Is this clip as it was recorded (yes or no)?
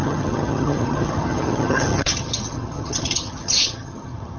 no